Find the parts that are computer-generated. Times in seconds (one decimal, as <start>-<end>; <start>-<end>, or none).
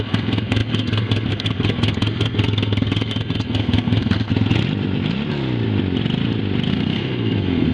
0.0-4.3; 6.7-7.7